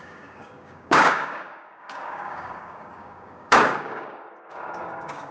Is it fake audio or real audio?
fake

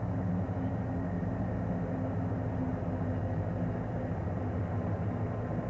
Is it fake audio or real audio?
real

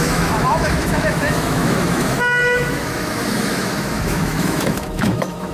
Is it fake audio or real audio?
fake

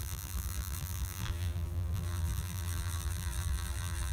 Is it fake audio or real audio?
fake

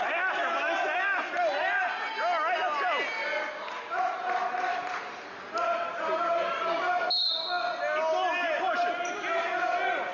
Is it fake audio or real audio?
real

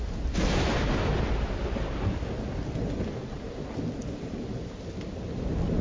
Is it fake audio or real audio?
real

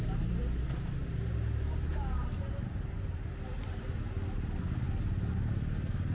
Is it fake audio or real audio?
real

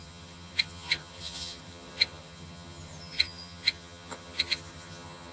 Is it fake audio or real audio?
fake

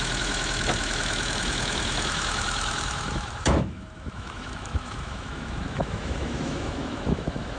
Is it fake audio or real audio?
fake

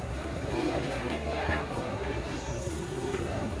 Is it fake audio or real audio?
fake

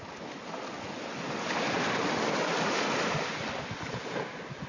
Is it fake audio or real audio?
real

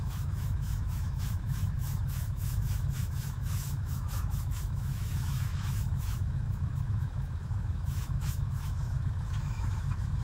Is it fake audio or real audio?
fake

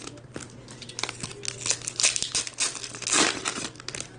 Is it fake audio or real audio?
real